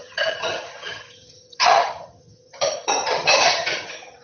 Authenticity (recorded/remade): remade